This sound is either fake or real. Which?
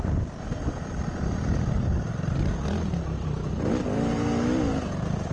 real